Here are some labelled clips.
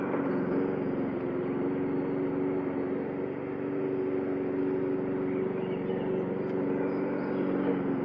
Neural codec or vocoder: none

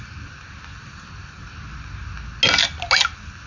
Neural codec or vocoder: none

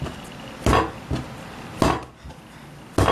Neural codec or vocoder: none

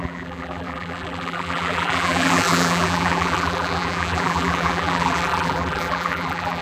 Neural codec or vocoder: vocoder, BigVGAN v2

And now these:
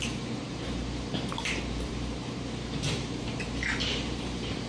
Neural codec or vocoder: vocoder, BigVGAN v2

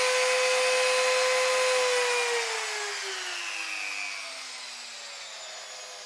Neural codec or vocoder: none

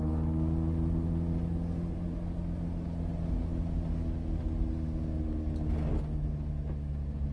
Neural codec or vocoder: none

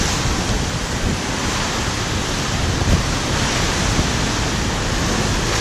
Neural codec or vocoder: none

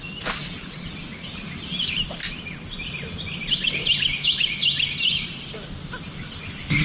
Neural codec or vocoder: vocoder, BigVGAN v2